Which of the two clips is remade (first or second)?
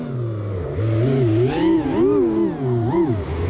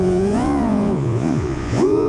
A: second